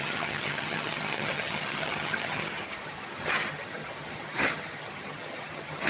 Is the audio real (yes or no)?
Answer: no